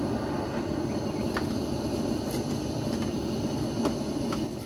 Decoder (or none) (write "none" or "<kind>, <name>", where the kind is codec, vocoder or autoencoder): none